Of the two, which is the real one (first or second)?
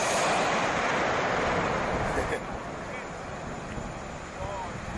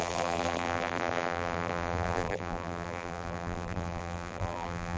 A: first